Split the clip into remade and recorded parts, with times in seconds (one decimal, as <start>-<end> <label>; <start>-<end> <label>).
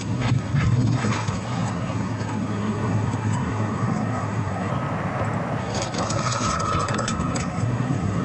0.0-4.7 remade; 4.7-5.6 recorded; 5.6-8.2 remade